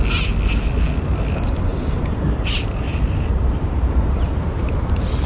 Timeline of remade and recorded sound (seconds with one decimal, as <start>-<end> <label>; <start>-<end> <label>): 0.0-1.7 recorded; 1.7-5.3 remade